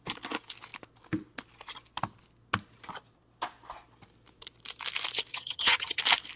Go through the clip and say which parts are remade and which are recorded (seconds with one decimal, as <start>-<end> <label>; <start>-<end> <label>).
0.0-5.3 recorded; 5.3-6.0 remade; 6.0-6.4 recorded

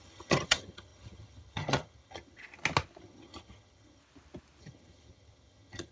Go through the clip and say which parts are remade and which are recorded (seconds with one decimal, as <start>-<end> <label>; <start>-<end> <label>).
0.0-2.4 remade; 2.4-3.0 recorded; 3.0-4.0 remade; 4.0-4.6 recorded; 4.6-5.9 remade

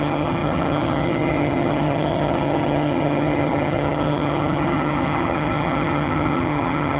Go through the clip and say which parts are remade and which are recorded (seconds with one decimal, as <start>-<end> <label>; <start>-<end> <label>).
0.0-7.0 remade